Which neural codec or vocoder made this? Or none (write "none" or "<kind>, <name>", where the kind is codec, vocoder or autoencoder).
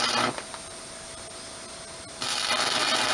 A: none